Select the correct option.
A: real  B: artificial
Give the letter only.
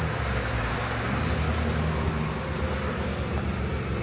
A